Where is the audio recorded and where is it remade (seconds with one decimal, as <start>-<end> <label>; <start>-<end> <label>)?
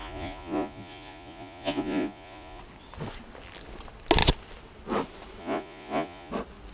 0.0-2.6 remade; 2.6-5.4 recorded; 5.4-6.3 remade; 6.3-6.7 recorded